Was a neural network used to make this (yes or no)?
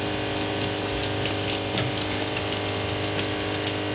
no